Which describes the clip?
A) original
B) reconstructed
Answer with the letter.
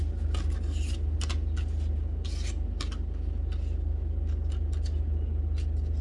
A